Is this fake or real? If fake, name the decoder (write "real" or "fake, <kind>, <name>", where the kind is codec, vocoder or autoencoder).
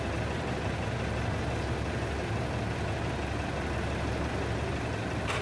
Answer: real